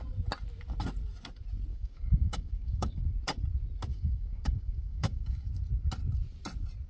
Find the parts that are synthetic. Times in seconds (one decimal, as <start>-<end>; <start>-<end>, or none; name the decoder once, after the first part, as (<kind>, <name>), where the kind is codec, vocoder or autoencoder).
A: 1.7-3.0 (codec, DAC); 3.9-5.5